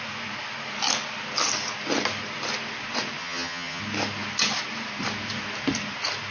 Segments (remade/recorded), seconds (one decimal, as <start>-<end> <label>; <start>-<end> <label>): 0.0-3.2 recorded; 3.2-3.8 remade; 3.8-6.3 recorded